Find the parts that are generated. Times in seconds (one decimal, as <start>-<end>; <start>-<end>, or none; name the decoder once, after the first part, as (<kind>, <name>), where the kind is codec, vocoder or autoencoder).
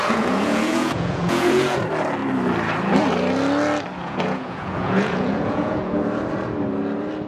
0.0-1.8 (vocoder, Vocos); 4.0-6.0